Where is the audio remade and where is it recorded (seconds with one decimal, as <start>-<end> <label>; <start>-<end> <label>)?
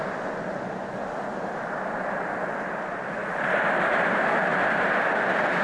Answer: 0.0-5.6 recorded